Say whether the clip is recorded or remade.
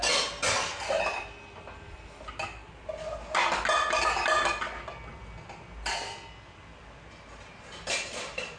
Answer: recorded